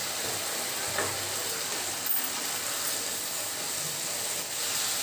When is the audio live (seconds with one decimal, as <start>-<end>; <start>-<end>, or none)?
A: 0.0-3.1; 3.6-5.0

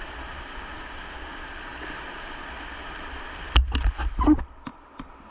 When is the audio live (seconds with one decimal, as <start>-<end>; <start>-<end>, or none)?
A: 0.0-5.3

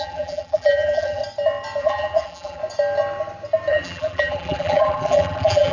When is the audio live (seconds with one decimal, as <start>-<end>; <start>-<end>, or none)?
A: 1.2-1.8; 2.6-3.7

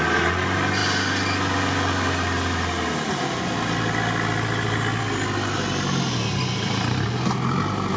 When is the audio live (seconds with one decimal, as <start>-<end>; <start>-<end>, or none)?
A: 0.0-8.0

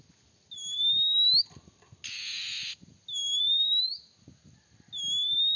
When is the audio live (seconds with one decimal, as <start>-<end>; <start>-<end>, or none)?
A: 0.0-3.2; 3.8-5.6